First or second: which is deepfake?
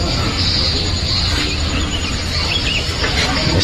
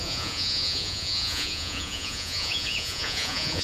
second